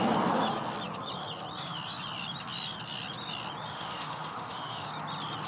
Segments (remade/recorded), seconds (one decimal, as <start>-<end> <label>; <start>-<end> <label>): 0.0-3.7 recorded; 3.7-4.9 remade; 4.9-5.5 recorded